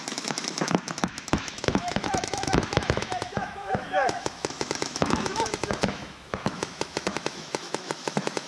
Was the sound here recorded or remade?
remade